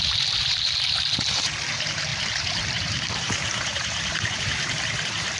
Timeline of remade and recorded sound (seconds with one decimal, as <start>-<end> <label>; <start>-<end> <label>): 0.0-5.4 remade